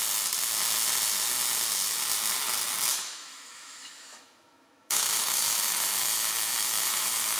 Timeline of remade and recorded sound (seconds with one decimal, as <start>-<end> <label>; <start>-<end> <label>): 0.0-2.9 recorded; 2.9-7.4 remade